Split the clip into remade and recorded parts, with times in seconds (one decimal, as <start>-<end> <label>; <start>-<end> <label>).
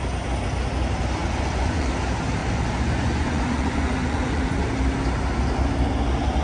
0.0-1.2 recorded; 1.2-1.9 remade; 1.9-2.4 recorded; 2.4-4.7 remade; 4.7-6.4 recorded